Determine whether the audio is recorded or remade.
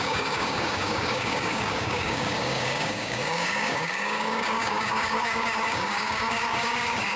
remade